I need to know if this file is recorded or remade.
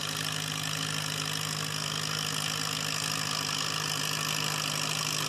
recorded